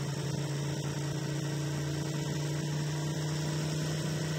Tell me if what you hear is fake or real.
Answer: real